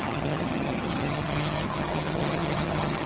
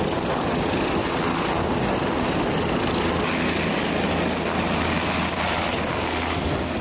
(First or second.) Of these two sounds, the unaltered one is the second